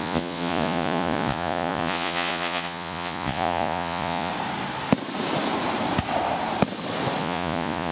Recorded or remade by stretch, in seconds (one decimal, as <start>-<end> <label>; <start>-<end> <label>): 0.0-4.3 remade; 4.3-7.2 recorded; 7.2-7.9 remade